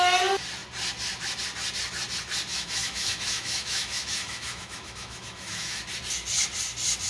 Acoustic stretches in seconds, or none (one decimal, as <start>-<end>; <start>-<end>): 0.0-2.5; 5.8-7.1